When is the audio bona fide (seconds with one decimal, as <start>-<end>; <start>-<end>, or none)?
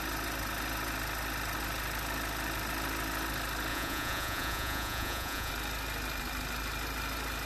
0.0-3.7; 5.5-7.5